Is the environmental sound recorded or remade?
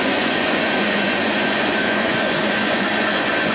remade